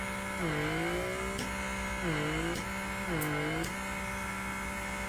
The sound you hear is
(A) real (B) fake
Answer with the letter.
A